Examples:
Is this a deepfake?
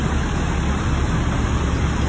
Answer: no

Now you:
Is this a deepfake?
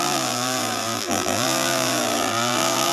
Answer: yes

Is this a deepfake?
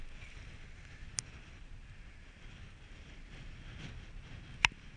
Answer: no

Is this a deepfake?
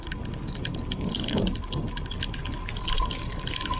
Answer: no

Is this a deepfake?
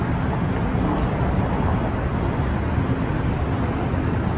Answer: no